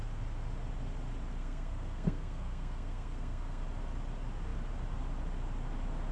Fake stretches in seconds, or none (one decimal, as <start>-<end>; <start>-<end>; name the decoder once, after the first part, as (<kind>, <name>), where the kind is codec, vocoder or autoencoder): 1.4-3.6 (codec, SNAC)